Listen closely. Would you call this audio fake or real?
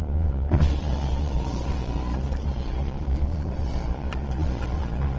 fake